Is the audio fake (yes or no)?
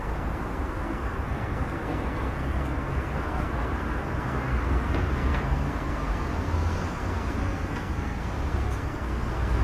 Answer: yes